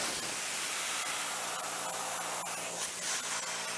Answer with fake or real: real